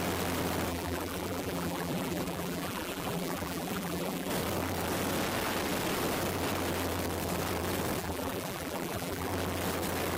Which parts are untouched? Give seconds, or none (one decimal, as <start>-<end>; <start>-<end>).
0.0-0.7; 4.3-8.0; 9.3-10.2